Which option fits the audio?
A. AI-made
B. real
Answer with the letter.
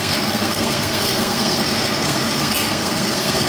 A